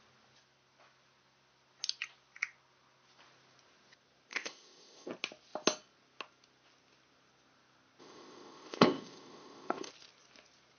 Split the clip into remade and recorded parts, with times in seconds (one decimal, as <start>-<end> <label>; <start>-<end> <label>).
0.0-4.3 recorded; 4.3-5.1 remade; 5.1-8.0 recorded; 8.0-9.9 remade; 9.9-10.8 recorded